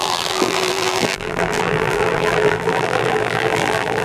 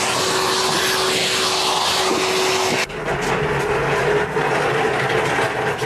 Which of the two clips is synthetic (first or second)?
first